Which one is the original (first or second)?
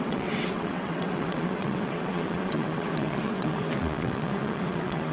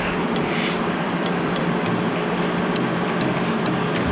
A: second